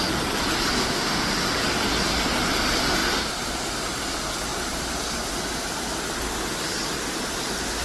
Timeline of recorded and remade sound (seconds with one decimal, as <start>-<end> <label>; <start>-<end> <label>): 0.0-0.8 recorded; 0.8-1.3 remade; 1.3-7.8 recorded